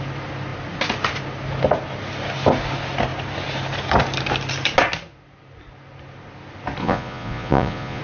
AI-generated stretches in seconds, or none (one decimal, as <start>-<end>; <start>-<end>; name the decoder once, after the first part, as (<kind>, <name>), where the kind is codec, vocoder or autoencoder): 6.8-8.0 (vocoder, Vocos)